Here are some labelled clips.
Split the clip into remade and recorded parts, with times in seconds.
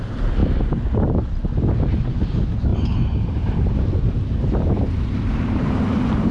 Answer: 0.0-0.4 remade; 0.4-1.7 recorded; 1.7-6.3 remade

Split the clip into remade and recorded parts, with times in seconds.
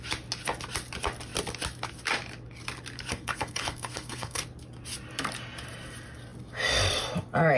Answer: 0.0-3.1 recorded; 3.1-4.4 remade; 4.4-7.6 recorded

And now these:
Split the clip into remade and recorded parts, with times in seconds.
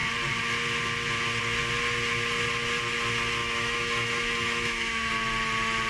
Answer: 0.0-3.4 recorded; 3.4-5.1 remade; 5.1-5.9 recorded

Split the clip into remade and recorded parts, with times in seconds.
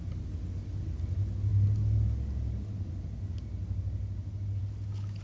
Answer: 0.0-5.2 recorded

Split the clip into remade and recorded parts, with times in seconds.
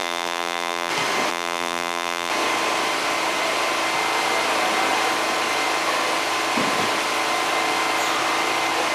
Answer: 0.0-0.9 remade; 0.9-1.3 recorded; 1.3-2.3 remade; 2.3-8.9 recorded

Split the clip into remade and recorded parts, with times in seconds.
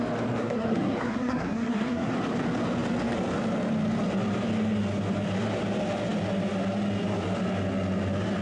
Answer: 0.0-0.4 recorded; 0.4-2.1 remade; 2.1-8.4 recorded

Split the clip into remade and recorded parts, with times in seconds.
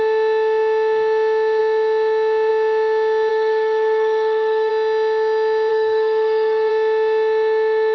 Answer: 0.0-3.3 recorded; 3.3-4.7 remade; 4.7-5.7 recorded; 5.7-6.7 remade; 6.7-7.9 recorded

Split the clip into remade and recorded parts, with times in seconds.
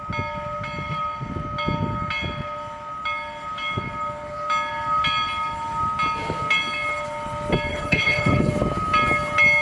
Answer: 0.0-7.7 recorded; 7.7-8.5 remade; 8.5-9.6 recorded